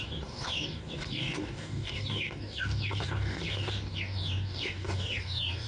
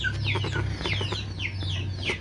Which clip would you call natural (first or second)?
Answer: second